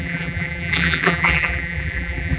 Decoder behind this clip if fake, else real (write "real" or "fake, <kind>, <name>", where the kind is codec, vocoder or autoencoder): fake, vocoder, BigVGAN v2